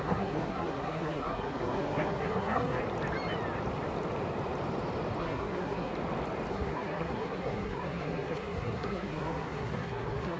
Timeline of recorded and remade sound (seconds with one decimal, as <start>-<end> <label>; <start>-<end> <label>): 0.0-2.8 remade; 2.8-5.2 recorded; 5.2-5.9 remade; 5.9-6.5 recorded; 6.5-10.4 remade